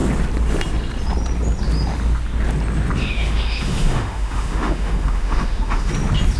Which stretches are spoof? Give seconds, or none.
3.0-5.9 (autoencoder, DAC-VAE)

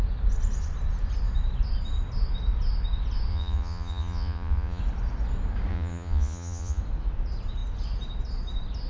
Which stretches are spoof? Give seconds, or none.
3.3-4.8 (vocoder, Vocos); 5.7-6.8

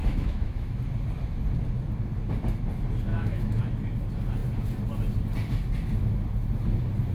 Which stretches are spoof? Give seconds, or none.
0.0-0.8 (autoencoder, DAC-VAE); 3.1-3.6

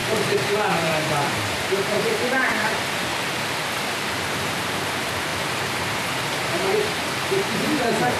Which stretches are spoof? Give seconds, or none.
0.0-3.1 (vocoder, BigVGAN v2); 3.6-8.2

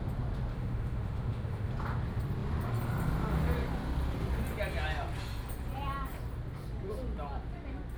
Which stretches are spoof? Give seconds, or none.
0.5-1.7 (autoencoder, DAC-VAE)

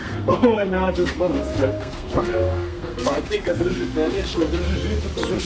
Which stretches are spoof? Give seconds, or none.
0.0-4.3 (codec, SNAC)

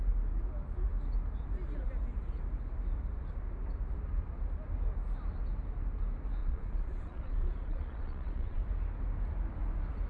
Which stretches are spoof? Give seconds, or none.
6.4-8.6 (vocoder, Vocos)

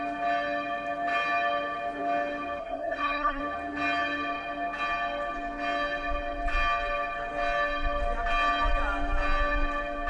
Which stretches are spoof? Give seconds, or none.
2.6-3.4 (codec, SNAC)